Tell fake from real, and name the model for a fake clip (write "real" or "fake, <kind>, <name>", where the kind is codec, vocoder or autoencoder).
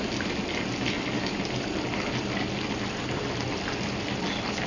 real